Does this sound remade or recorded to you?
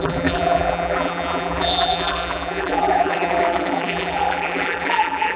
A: remade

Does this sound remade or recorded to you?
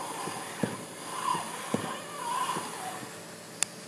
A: recorded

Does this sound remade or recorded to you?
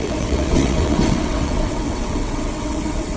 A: remade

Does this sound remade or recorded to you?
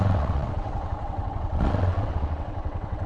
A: remade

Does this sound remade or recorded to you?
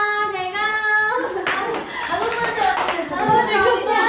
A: recorded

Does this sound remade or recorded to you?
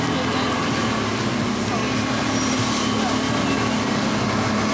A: recorded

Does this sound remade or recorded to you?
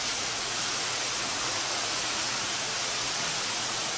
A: remade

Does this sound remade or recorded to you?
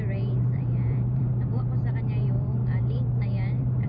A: remade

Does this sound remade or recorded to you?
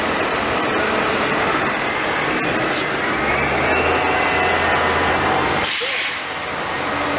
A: recorded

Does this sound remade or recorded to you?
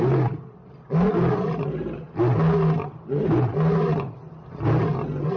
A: recorded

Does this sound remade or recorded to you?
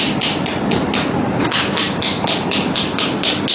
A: recorded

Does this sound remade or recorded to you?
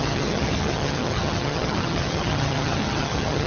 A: remade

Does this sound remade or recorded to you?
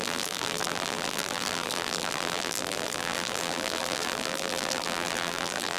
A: remade